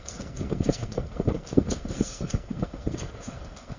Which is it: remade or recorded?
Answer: remade